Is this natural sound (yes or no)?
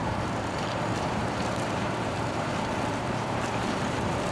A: no